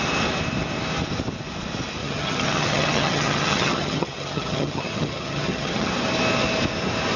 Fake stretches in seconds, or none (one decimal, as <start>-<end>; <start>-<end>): 2.0-5.9